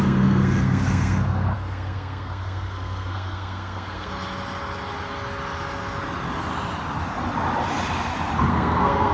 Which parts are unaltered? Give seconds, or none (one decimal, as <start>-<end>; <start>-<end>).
4.1-8.5